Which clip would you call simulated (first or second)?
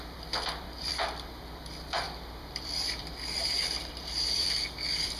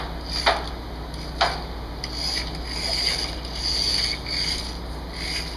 first